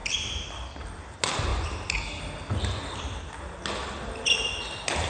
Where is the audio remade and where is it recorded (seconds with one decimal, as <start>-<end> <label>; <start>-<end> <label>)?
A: 0.0-5.1 recorded